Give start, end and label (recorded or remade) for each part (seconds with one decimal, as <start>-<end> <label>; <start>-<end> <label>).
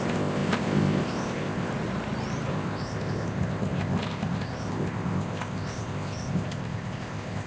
0.0-1.7 remade; 1.7-2.5 recorded; 2.5-7.5 remade